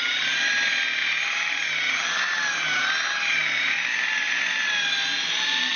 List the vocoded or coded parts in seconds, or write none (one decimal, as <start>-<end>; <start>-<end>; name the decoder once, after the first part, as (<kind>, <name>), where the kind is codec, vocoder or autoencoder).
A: none